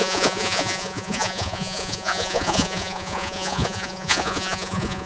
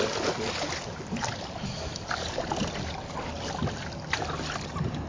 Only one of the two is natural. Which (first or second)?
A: second